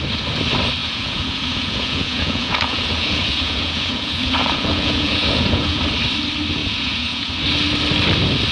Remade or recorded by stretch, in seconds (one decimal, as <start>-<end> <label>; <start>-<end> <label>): 0.0-0.8 recorded; 0.8-5.8 remade; 5.8-6.6 recorded; 6.6-7.3 remade; 7.3-8.5 recorded